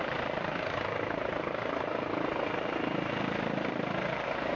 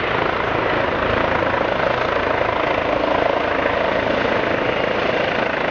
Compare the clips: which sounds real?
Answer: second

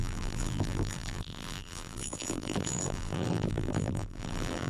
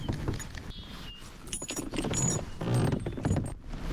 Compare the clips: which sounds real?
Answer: second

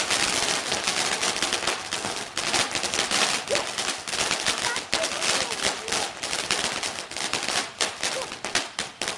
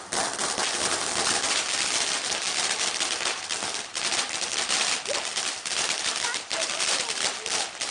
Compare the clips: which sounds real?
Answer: first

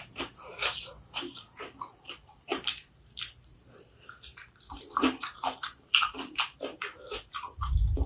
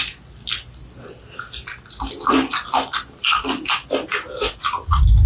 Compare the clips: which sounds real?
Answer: second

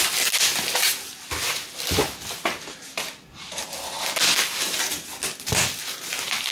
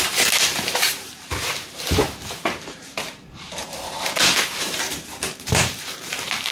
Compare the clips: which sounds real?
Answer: first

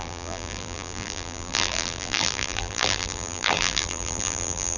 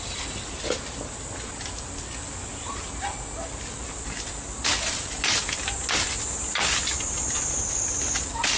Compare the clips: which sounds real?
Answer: second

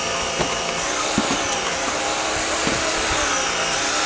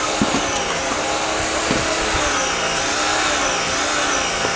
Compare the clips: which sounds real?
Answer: second